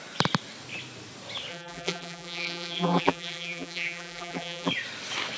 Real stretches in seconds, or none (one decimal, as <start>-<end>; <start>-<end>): 0.0-1.5; 4.7-5.4